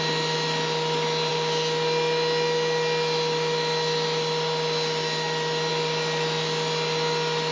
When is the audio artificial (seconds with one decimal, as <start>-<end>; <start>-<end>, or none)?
none